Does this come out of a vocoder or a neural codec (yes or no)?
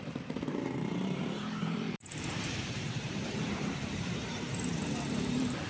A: yes